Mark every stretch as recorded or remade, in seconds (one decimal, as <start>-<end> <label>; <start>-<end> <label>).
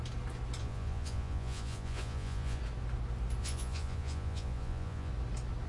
0.0-0.6 recorded; 0.6-2.6 remade; 2.6-3.4 recorded; 3.4-5.1 remade; 5.1-5.7 recorded